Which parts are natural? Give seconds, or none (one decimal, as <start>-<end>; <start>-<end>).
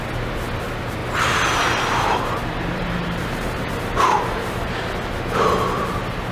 0.0-1.0; 4.8-6.3